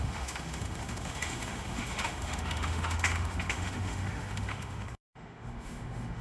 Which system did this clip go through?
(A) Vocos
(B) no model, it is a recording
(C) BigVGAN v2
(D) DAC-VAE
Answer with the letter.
D